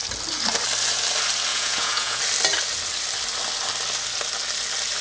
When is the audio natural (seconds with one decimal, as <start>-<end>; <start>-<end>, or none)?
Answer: 0.0-1.5; 2.2-5.0